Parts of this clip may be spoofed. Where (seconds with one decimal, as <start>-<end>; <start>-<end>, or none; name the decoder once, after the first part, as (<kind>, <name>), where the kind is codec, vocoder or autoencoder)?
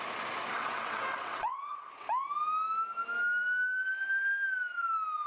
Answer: 0.5-1.9 (vocoder, WaveNeXt)